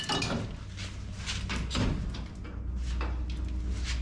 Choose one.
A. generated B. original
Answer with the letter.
B